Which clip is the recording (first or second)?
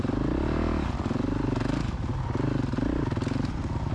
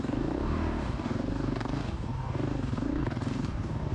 first